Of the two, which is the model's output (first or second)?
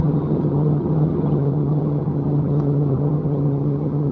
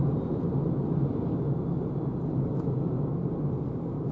first